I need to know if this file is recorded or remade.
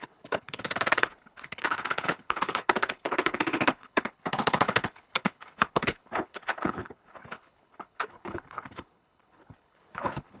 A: remade